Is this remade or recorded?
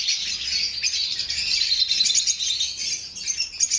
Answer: recorded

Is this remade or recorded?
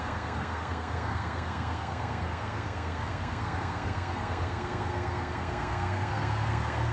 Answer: remade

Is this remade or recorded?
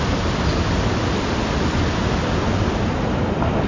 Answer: recorded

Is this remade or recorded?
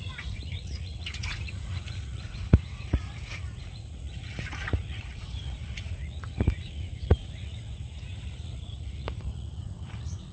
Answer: remade